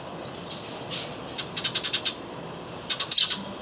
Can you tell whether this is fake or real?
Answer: fake